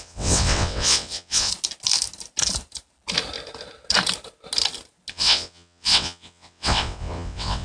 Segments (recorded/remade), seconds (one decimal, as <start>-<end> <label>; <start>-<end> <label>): 0.0-1.5 remade; 1.5-5.1 recorded; 5.1-7.6 remade